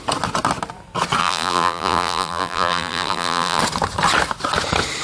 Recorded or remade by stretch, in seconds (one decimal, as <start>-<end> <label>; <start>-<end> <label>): 0.0-1.2 recorded; 1.2-3.6 remade; 3.6-5.0 recorded